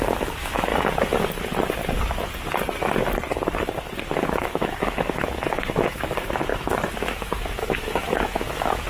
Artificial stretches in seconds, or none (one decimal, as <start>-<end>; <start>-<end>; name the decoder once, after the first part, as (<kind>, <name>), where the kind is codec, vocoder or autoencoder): 0.0-0.7 (autoencoder, DAC-VAE); 4.1-8.9